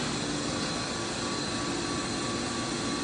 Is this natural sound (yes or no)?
yes